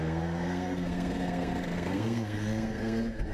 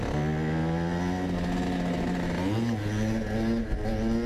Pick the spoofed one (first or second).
first